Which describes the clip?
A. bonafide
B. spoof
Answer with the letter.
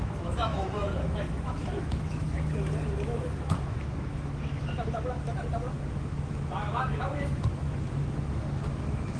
B